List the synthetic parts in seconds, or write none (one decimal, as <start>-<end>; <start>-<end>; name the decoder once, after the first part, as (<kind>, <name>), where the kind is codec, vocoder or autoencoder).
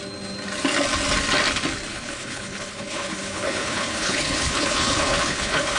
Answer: 1.9-5.8 (codec, HILCodec)